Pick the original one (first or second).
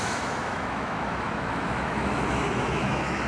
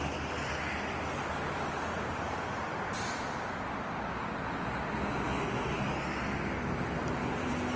second